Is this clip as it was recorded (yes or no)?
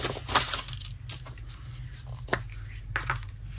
yes